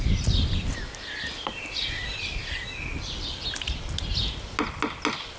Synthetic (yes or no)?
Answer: no